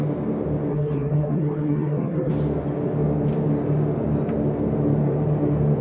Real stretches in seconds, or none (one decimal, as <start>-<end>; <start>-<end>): 0.0-0.7; 2.3-5.8